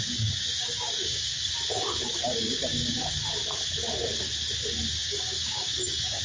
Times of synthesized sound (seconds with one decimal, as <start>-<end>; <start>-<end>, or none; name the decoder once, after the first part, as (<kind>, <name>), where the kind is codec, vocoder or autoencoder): 0.0-1.3 (codec, DAC); 2.1-3.0; 5.0-6.2